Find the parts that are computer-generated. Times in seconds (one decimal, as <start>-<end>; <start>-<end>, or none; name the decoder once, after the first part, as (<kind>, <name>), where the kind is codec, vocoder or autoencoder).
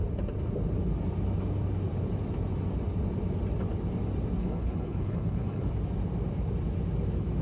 4.4-5.7 (codec, HILCodec)